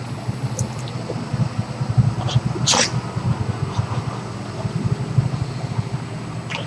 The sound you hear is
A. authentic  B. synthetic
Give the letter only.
A